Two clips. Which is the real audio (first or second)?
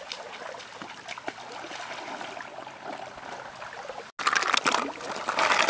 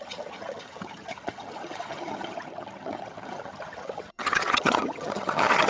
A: first